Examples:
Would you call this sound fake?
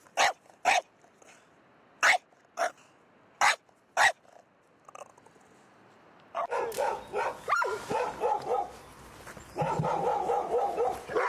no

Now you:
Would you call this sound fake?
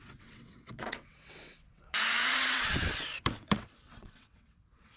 yes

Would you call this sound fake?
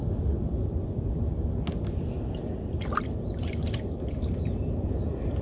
no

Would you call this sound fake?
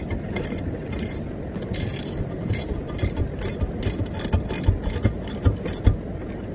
no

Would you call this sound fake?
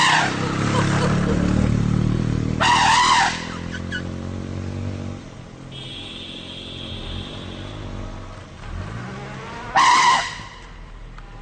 no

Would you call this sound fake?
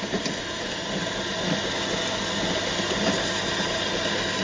no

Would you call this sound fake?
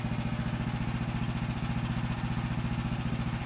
no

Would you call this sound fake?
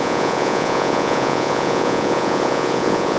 yes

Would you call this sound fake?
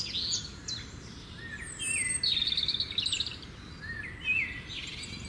no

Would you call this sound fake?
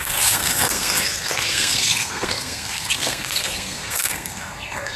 yes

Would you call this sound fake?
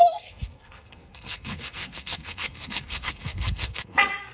yes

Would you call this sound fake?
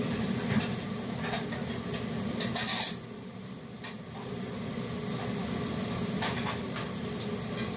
no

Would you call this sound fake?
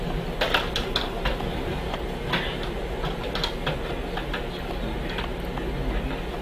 no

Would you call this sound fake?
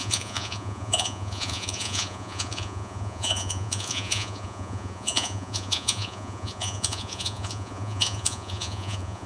yes